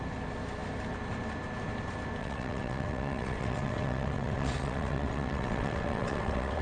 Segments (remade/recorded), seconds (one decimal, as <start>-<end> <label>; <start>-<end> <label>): 0.0-2.2 recorded; 2.2-6.6 remade